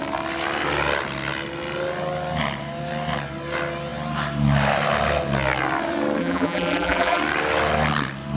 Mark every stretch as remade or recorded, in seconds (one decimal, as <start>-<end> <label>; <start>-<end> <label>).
0.0-6.2 recorded; 6.2-7.2 remade; 7.2-8.4 recorded